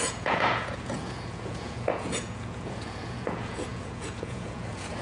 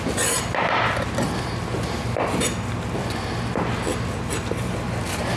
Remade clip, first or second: first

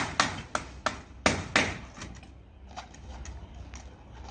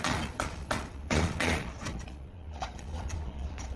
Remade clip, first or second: second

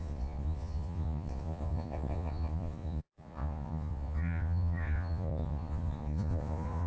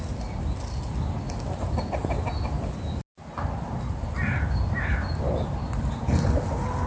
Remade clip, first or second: first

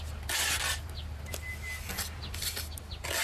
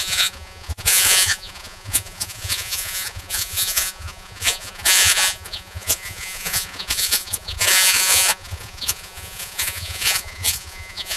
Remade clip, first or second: second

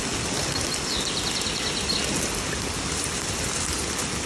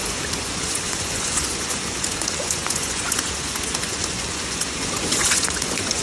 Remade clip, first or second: second